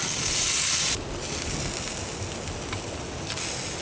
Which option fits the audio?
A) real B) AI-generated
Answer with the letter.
A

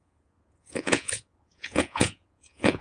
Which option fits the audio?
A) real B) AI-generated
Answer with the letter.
B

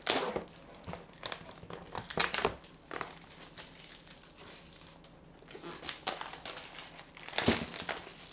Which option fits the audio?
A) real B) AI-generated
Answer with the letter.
A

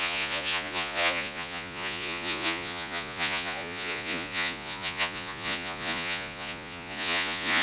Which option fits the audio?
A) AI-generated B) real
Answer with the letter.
A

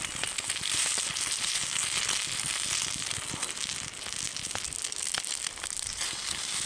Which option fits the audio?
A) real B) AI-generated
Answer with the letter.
A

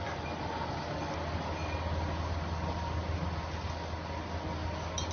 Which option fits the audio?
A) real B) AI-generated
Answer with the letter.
A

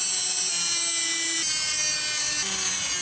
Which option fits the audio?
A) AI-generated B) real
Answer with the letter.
B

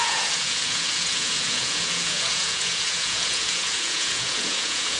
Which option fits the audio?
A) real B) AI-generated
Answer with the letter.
B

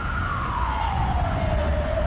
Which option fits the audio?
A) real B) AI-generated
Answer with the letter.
B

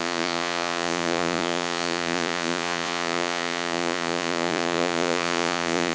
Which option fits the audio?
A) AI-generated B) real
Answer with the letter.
A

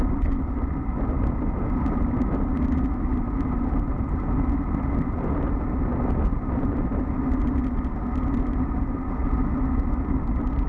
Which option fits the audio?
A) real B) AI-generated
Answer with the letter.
A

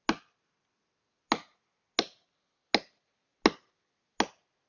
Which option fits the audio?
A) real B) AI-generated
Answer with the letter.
A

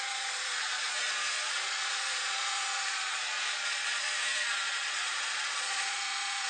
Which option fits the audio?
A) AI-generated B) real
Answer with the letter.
A